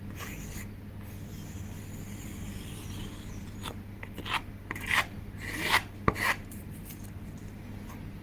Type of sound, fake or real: real